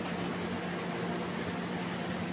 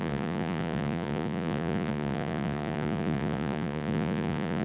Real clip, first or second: first